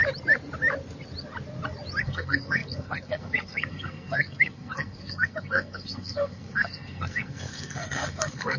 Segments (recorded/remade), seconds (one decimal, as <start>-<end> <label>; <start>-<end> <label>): 0.0-2.0 recorded; 2.0-8.6 remade